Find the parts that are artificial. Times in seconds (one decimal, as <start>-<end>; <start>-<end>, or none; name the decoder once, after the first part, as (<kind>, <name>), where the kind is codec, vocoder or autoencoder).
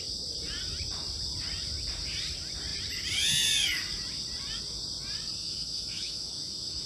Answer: 5.4-6.9 (autoencoder, DAC-VAE)